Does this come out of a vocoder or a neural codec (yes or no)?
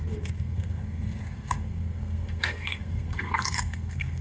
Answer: yes